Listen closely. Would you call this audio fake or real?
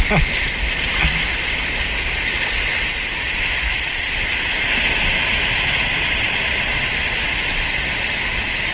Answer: real